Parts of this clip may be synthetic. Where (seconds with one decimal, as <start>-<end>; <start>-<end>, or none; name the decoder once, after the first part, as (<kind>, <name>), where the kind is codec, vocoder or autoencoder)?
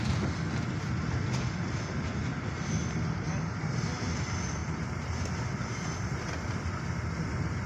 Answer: 4.6-6.3 (vocoder, BigVGAN v2)